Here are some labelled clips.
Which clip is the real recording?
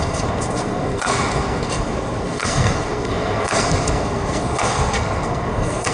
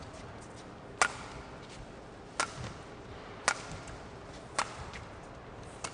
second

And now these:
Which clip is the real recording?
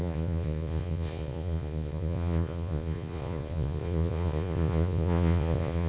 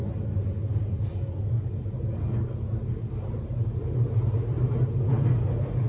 second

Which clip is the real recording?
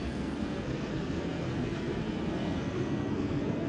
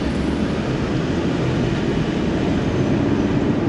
second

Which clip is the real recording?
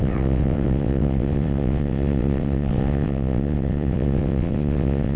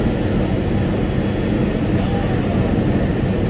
second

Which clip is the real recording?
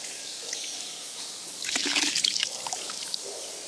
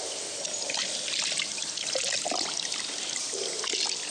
second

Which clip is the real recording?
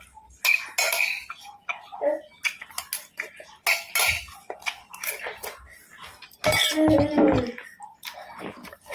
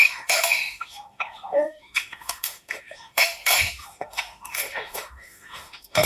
first